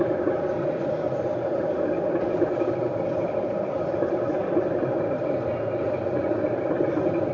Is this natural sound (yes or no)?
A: yes